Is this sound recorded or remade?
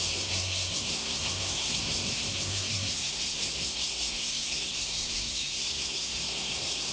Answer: remade